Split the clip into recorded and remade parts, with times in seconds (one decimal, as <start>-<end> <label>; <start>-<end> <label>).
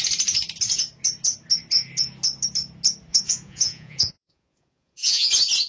0.0-3.1 recorded; 3.1-5.3 remade; 5.3-5.7 recorded